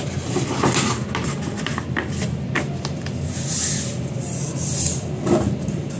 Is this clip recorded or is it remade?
recorded